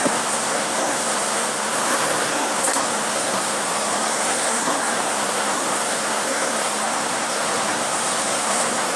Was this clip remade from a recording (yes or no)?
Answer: yes